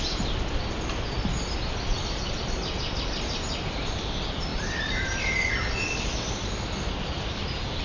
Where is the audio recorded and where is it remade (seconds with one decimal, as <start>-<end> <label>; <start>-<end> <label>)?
0.0-7.8 recorded